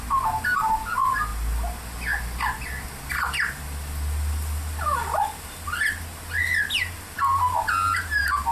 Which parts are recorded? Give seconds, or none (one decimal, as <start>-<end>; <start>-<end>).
0.0-8.5